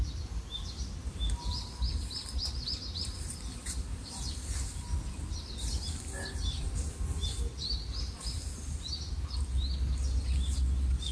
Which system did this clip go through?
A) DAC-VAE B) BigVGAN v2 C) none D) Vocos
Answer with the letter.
C